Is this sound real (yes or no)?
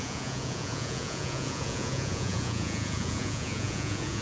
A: no